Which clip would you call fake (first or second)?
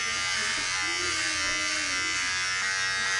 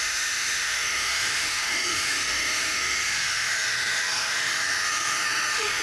second